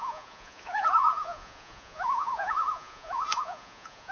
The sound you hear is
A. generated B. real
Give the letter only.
A